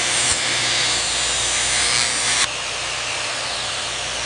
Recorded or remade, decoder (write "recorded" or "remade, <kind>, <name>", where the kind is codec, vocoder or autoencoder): recorded